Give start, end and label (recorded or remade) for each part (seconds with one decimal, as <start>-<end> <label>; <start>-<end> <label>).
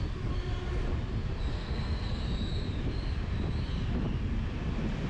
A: 0.0-1.5 recorded; 1.5-2.2 remade; 2.2-5.1 recorded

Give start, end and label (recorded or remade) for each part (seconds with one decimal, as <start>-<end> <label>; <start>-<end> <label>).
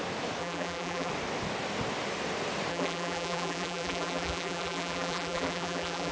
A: 0.0-0.4 recorded; 0.4-1.1 remade; 1.1-2.7 recorded; 2.7-6.1 remade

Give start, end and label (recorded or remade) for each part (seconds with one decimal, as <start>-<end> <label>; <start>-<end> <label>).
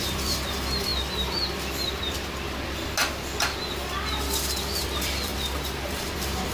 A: 0.0-0.9 remade; 0.9-4.8 recorded; 4.8-5.3 remade; 5.3-6.0 recorded; 6.0-6.5 remade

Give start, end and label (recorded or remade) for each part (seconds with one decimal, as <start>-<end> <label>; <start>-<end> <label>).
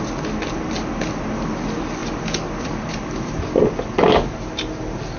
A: 0.0-5.2 recorded